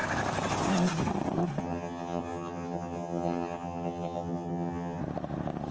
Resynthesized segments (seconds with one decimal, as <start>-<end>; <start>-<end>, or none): 1.6-5.0